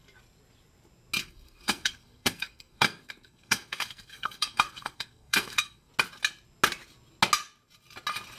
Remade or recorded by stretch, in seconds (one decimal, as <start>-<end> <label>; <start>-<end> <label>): 0.0-1.2 recorded; 1.2-5.9 remade; 5.9-8.4 recorded